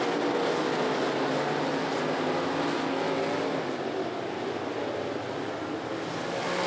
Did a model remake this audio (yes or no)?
no